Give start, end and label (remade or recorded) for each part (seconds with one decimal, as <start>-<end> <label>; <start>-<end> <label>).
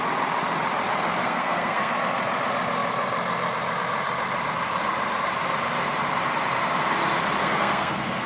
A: 0.0-1.2 recorded; 1.2-1.9 remade; 1.9-7.4 recorded; 7.4-8.3 remade